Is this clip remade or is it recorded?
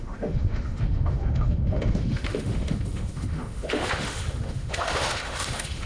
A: remade